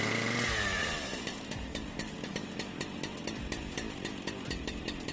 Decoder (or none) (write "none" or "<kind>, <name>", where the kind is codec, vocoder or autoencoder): none